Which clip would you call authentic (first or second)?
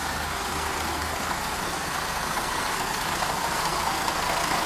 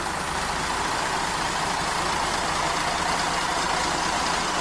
second